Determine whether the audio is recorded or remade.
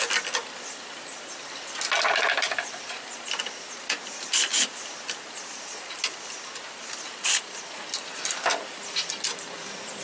recorded